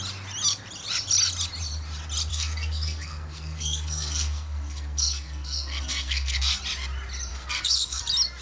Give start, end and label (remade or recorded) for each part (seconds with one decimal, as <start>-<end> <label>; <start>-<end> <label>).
0.0-2.3 recorded; 2.3-6.6 remade; 6.6-7.3 recorded; 7.3-8.0 remade; 8.0-8.4 recorded